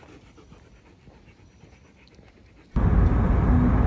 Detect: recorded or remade recorded